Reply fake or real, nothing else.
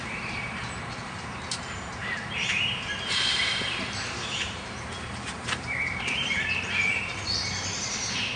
fake